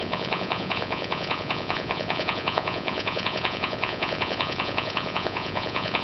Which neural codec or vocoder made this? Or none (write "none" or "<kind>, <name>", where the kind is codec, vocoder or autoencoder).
vocoder, Vocos